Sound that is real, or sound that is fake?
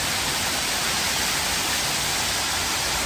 real